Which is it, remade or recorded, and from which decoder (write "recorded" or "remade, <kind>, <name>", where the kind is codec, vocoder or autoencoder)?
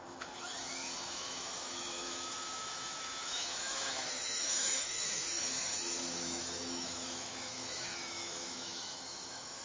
remade, autoencoder, DAC-VAE